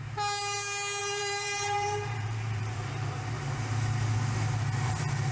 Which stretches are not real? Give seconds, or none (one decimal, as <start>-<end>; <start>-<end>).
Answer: 1.0-3.4